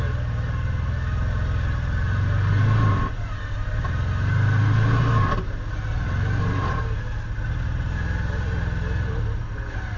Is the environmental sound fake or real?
real